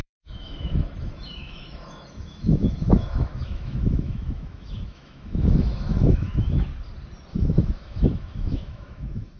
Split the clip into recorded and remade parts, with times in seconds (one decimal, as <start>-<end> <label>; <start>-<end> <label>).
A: 0.0-6.7 remade; 6.7-7.3 recorded; 7.3-9.4 remade